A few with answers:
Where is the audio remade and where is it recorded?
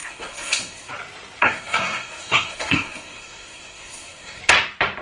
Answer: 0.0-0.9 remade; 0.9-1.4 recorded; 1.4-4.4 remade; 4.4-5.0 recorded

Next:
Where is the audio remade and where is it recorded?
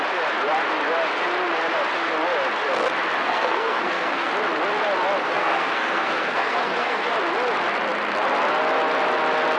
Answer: 0.0-3.2 recorded; 3.2-4.3 remade; 4.3-5.2 recorded; 5.2-7.1 remade; 7.1-9.6 recorded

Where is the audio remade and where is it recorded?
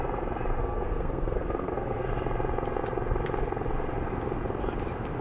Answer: 0.0-0.6 recorded; 0.6-2.1 remade; 2.1-5.2 recorded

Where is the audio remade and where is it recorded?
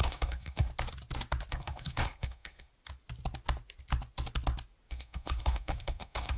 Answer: 0.0-0.7 remade; 0.7-1.5 recorded; 1.5-2.7 remade; 2.7-4.9 recorded; 4.9-6.4 remade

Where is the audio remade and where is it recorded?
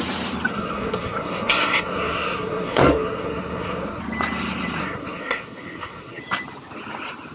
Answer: 0.0-0.5 recorded; 0.5-4.0 remade; 4.0-4.8 recorded; 4.8-6.2 remade; 6.2-7.3 recorded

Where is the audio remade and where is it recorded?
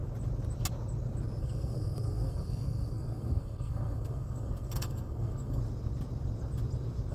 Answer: 0.0-1.4 recorded; 1.4-5.6 remade; 5.6-7.1 recorded